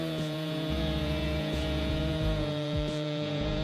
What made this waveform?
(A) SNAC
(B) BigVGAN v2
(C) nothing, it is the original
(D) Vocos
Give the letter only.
D